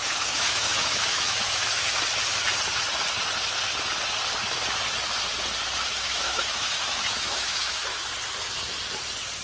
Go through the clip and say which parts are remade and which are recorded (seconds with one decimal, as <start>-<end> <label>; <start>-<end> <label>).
0.0-2.0 remade; 2.0-5.9 recorded; 5.9-8.1 remade; 8.1-9.4 recorded